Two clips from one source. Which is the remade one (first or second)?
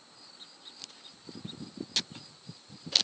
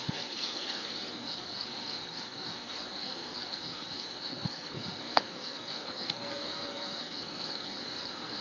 second